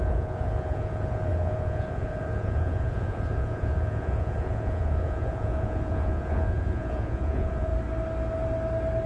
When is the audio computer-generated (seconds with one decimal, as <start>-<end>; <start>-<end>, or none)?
0.0-7.7